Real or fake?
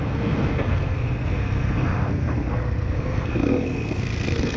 fake